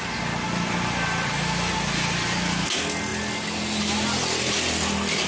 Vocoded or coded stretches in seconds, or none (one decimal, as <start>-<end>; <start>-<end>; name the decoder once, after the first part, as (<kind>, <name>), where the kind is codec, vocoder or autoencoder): none